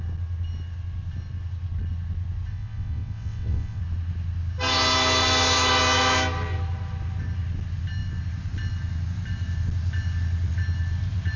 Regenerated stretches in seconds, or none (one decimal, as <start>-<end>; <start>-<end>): 2.5-3.8